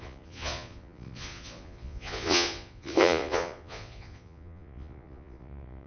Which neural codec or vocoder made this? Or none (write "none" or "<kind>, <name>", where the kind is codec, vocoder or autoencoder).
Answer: vocoder, Vocos